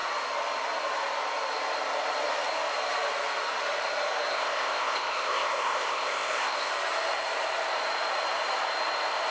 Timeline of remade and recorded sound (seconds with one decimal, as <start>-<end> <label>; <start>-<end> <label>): 0.0-4.3 recorded; 4.3-6.7 remade; 6.7-9.3 recorded